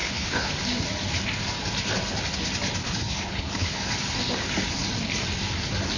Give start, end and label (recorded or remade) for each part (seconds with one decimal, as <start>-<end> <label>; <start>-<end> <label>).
0.0-0.5 remade; 0.5-2.8 recorded; 2.8-3.9 remade; 3.9-6.0 recorded